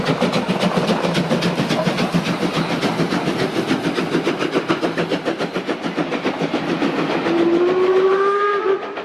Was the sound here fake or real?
real